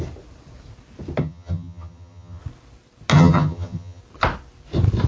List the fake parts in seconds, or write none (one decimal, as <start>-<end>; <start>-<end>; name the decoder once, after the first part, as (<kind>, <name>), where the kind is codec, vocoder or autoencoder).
1.2-2.4 (vocoder, HiFi-GAN); 3.1-4.0